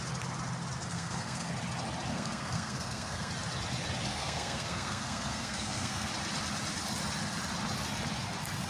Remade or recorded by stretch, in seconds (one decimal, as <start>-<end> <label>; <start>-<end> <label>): 0.0-0.9 recorded; 0.9-1.5 remade; 1.5-2.1 recorded; 2.1-3.3 remade; 3.3-4.1 recorded; 4.1-6.1 remade; 6.1-8.7 recorded